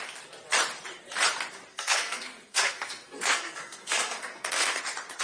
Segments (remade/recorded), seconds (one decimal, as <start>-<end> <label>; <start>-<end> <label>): 0.0-1.7 recorded; 1.7-4.8 remade; 4.8-5.2 recorded